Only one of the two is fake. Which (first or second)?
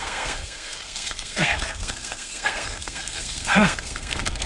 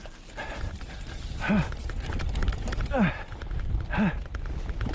first